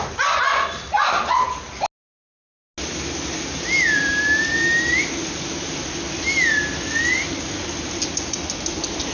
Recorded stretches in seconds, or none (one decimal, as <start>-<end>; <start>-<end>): 0.0-9.1